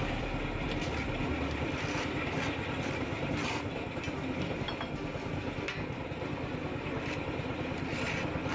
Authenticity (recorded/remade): recorded